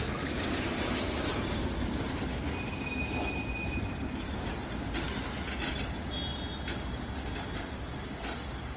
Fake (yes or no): no